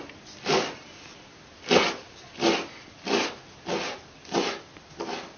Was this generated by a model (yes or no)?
no